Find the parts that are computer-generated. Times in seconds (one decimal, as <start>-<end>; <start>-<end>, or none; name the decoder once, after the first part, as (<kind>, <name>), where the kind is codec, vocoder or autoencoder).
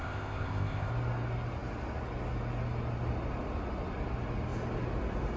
0.0-0.9 (codec, ZipCodec)